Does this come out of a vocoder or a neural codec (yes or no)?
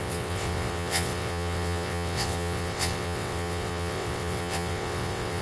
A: yes